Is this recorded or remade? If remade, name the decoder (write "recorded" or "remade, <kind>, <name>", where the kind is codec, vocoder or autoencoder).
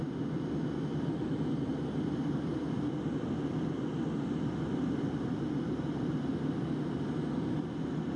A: recorded